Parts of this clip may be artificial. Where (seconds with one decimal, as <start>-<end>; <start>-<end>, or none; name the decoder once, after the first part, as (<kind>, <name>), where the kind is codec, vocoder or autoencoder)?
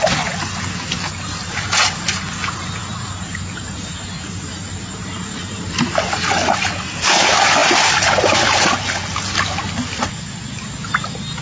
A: 2.9-6.7 (vocoder, BigVGAN v2)